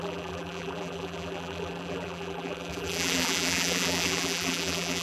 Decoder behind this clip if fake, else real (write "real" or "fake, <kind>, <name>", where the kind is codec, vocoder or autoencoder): fake, vocoder, BigVGAN v2